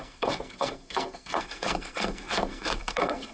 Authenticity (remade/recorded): remade